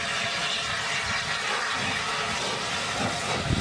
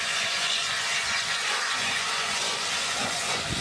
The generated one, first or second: second